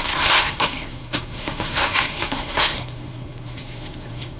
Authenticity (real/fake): fake